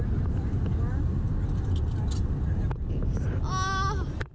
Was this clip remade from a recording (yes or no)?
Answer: no